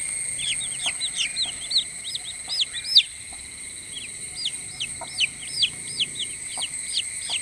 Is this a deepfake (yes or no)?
no